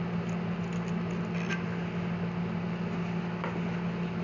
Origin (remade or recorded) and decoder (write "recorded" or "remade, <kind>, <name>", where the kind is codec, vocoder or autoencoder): recorded